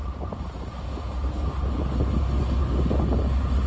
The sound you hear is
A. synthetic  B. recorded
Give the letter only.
B